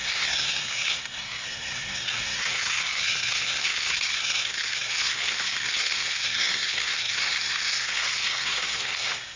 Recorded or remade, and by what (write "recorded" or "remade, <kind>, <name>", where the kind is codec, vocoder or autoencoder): remade, codec, SNAC